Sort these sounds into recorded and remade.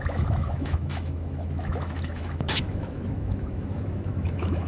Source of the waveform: remade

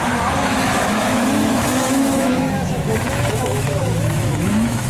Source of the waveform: remade